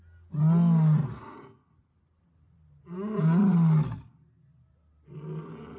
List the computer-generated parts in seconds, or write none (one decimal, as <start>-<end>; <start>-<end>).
1.0-1.7